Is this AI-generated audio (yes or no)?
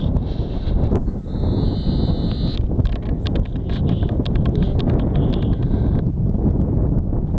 no